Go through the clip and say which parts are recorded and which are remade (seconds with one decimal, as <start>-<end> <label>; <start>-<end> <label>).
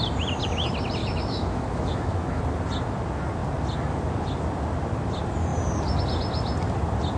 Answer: 0.0-1.0 recorded; 1.0-2.4 remade; 2.4-7.2 recorded